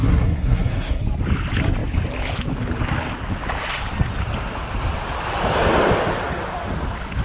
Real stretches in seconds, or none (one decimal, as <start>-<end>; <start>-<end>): 1.0-7.2